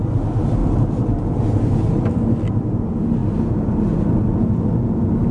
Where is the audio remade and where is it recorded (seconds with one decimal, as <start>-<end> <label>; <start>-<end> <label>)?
0.0-0.6 recorded; 0.6-1.7 remade; 1.7-5.3 recorded